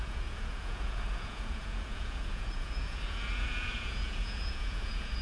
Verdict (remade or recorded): remade